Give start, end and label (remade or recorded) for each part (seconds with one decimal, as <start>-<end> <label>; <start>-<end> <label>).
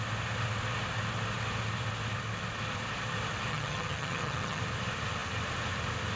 0.0-3.5 recorded; 3.5-4.6 remade; 4.6-6.2 recorded